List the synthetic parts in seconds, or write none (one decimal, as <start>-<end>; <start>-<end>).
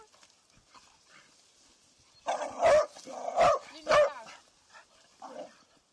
none